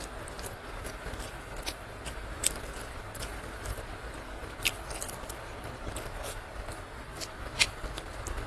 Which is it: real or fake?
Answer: real